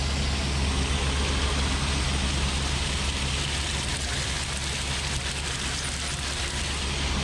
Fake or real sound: real